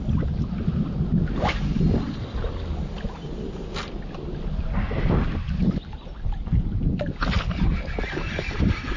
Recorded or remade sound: recorded